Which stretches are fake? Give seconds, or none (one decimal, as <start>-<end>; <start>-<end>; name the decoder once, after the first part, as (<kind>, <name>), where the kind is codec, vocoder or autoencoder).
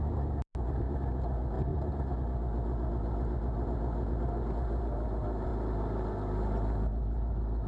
none